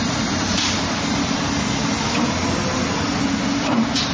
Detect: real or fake real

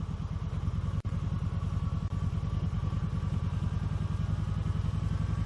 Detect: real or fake real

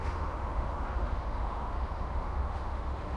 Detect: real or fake fake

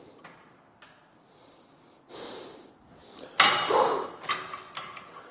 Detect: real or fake real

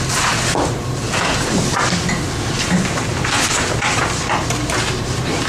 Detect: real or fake real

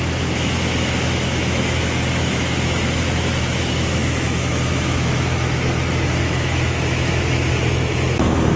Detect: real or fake fake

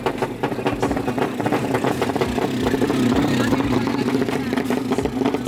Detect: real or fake real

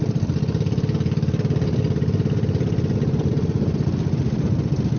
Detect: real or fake real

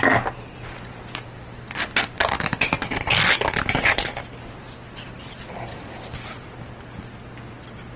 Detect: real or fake real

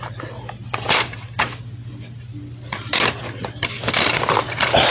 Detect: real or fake real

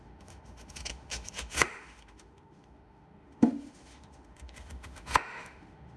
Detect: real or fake fake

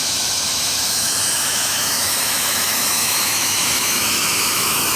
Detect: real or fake fake